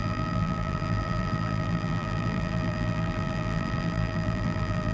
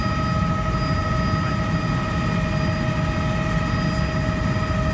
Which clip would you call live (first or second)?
second